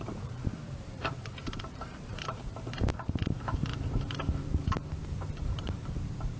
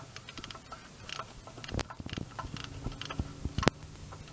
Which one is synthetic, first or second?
first